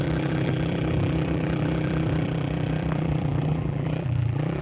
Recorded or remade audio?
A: remade